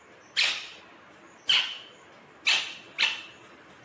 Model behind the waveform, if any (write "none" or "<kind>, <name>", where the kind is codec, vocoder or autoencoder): none